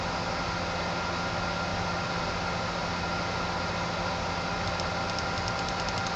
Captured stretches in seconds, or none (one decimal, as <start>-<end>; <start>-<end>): 0.0-1.7; 2.3-6.2